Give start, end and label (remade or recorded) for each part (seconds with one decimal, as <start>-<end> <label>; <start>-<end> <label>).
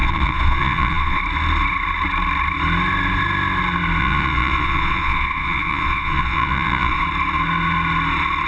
0.0-1.2 remade; 1.2-4.0 recorded; 4.0-7.0 remade; 7.0-8.5 recorded